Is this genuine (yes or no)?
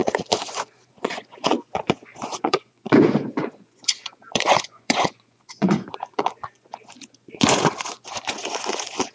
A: no